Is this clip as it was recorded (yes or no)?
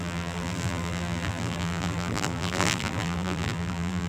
no